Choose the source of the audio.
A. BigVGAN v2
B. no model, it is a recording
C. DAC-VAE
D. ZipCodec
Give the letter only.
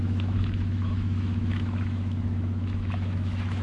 C